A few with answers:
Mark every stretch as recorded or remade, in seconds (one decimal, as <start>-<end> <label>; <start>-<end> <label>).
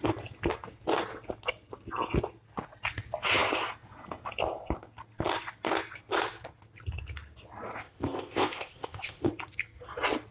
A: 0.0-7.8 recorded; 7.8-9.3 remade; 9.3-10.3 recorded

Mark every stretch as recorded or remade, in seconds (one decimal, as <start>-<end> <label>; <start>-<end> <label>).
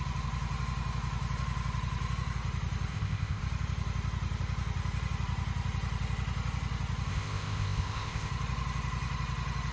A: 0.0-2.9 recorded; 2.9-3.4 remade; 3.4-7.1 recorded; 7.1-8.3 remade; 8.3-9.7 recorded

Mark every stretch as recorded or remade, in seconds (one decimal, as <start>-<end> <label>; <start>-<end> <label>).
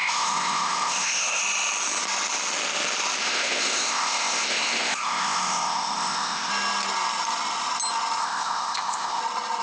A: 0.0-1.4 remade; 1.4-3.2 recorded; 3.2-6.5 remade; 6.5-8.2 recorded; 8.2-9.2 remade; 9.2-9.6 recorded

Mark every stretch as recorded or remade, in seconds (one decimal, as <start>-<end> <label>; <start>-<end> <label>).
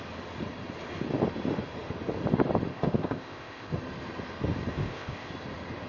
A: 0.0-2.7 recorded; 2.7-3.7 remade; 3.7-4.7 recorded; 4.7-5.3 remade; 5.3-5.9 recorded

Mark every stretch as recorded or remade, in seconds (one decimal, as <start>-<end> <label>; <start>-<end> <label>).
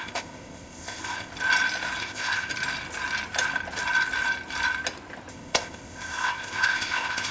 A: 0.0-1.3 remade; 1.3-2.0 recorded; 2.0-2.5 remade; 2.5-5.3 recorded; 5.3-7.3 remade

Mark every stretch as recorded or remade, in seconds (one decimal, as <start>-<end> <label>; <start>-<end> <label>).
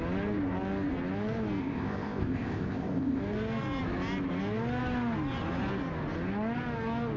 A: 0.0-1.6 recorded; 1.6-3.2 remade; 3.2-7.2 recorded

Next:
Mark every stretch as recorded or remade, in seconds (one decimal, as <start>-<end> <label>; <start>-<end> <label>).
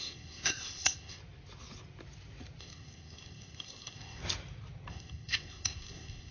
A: 0.0-1.2 remade; 1.2-2.6 recorded; 2.6-4.2 remade; 4.2-4.9 recorded; 4.9-6.3 remade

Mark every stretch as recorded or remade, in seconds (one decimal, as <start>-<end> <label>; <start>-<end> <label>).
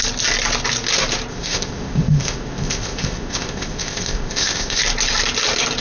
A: 0.0-1.3 recorded; 1.3-4.8 remade; 4.8-5.8 recorded